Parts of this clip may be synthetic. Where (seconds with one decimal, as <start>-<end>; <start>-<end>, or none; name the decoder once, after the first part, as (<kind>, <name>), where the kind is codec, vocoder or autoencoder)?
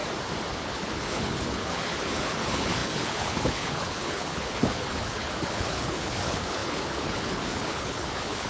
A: 0.5-8.5 (codec, HILCodec)